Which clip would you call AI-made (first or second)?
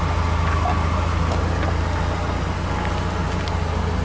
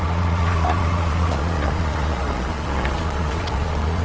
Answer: second